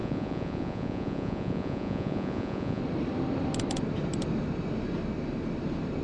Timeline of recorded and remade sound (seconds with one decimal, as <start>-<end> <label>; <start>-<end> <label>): 0.0-2.8 remade; 2.8-6.0 recorded

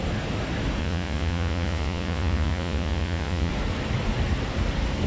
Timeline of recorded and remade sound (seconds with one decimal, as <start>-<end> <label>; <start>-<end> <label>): 0.0-0.8 recorded; 0.8-3.5 remade; 3.5-5.1 recorded

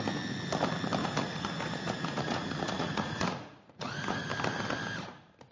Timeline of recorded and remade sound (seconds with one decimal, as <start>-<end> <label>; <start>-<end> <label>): 0.0-1.0 recorded; 1.0-4.3 remade; 4.3-5.5 recorded